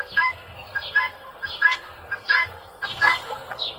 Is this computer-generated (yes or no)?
yes